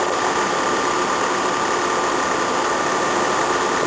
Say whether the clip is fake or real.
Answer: real